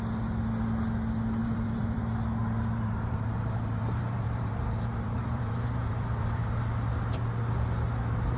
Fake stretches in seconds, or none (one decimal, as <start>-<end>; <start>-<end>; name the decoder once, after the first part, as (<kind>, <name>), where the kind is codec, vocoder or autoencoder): 1.4-2.0 (vocoder, BigVGAN v2); 2.4-6.6